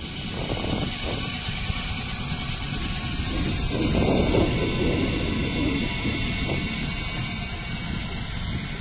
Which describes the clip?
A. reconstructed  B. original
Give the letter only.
B